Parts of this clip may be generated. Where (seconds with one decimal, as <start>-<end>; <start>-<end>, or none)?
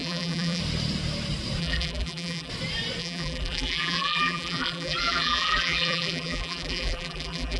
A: 0.0-0.6; 1.6-2.5; 3.0-7.6